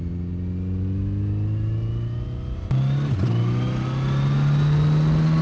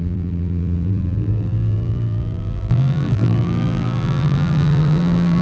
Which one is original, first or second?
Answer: first